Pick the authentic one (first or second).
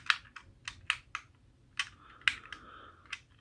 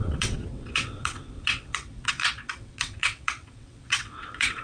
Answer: first